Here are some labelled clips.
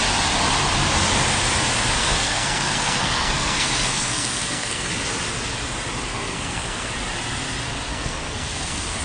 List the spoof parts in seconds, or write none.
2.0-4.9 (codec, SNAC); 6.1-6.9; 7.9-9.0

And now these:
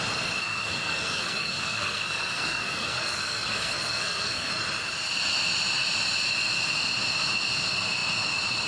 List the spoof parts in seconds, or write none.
0.4-4.5 (codec, SNAC)

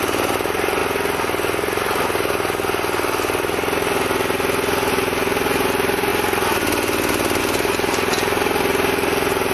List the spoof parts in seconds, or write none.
0.0-0.8 (vocoder, BigVGAN v2); 4.9-6.1; 7.4-9.5

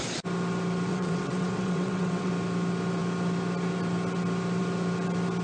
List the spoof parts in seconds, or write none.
0.9-2.3 (vocoder, WaveNeXt)

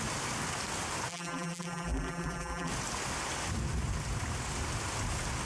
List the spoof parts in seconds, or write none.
1.1-2.7 (vocoder, BigVGAN v2)

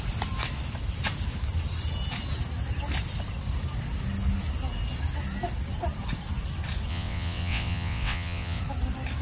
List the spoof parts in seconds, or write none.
6.9-8.6 (vocoder, WaveNeXt)